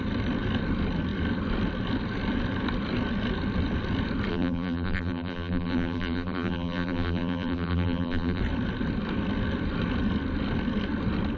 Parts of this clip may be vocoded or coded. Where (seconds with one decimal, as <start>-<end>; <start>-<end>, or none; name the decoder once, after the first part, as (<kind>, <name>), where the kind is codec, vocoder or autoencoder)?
4.3-8.4 (vocoder, BigVGAN v2)